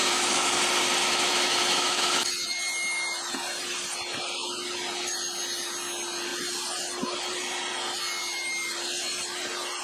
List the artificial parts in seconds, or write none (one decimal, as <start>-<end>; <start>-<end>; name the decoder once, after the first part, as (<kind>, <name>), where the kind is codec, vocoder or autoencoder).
0.0-0.6 (autoencoder, DAC-VAE); 1.0-2.3